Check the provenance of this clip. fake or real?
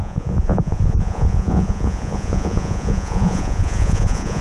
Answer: fake